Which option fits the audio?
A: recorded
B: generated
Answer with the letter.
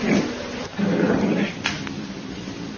A